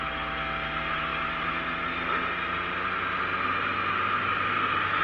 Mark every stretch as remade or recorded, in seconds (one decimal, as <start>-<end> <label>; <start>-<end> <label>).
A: 0.0-5.0 recorded